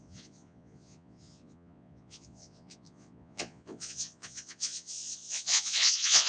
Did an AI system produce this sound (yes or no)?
yes